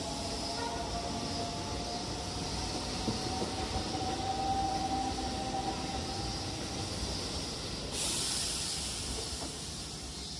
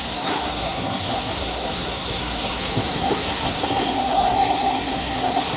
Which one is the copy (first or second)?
second